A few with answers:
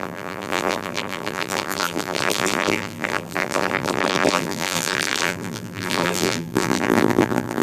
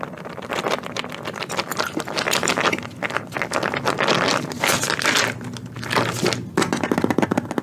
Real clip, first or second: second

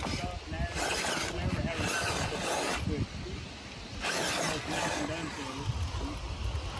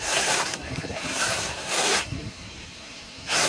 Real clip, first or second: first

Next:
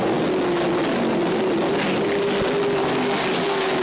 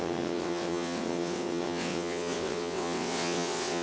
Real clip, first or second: first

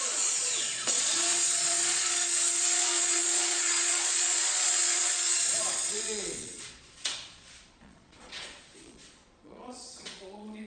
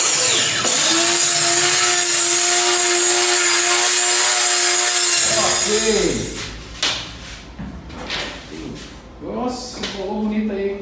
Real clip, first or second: second